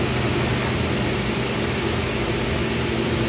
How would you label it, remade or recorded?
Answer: recorded